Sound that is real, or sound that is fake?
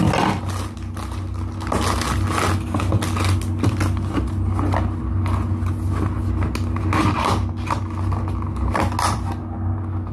real